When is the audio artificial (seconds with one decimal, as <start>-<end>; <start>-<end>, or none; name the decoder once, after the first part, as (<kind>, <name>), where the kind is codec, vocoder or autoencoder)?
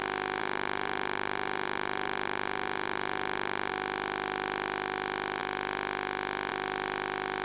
0.4-3.7 (vocoder, BigVGAN v2)